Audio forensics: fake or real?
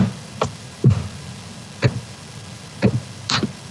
real